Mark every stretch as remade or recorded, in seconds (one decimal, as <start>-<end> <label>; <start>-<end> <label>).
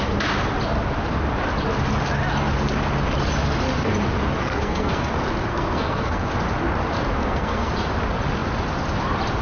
0.0-4.4 recorded; 4.4-5.1 remade; 5.1-5.5 recorded; 5.5-6.3 remade; 6.3-7.2 recorded; 7.2-7.7 remade; 7.7-9.4 recorded